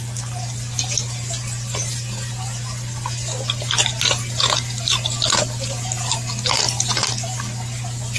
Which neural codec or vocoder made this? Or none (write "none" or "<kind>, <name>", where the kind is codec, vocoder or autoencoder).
none